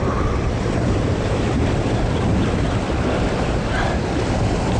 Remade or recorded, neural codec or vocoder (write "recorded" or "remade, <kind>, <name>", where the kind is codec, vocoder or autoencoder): remade, vocoder, BigVGAN v2